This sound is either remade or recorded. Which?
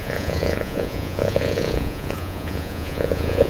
remade